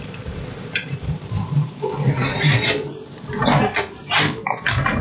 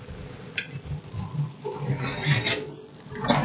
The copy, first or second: first